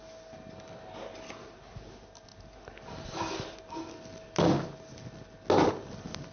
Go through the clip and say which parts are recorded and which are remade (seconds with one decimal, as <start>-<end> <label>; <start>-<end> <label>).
0.0-6.3 recorded